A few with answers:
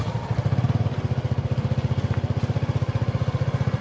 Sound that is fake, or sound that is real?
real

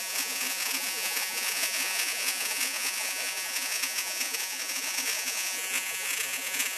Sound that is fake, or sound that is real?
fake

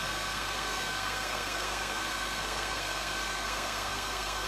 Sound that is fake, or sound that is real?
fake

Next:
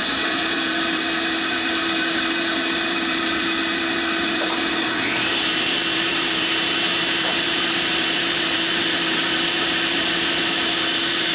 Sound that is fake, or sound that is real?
fake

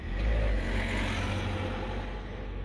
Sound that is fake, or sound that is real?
real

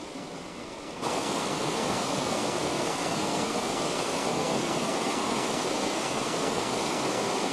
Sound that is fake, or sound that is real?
fake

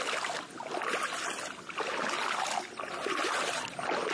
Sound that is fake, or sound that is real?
real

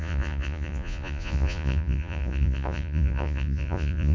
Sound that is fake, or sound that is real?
fake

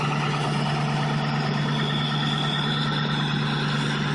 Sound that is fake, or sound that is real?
real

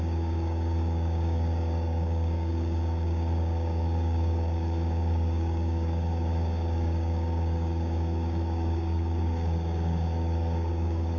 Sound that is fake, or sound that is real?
fake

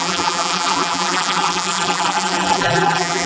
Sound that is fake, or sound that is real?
fake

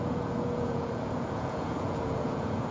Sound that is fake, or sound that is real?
fake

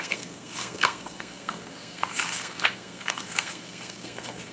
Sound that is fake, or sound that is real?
fake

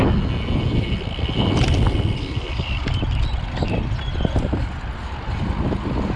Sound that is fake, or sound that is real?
real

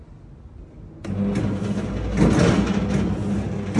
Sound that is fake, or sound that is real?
real